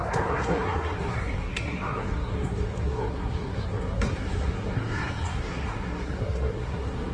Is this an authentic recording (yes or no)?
no